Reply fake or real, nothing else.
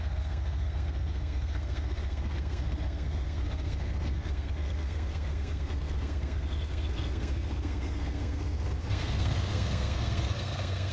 fake